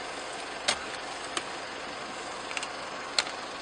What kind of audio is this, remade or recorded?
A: recorded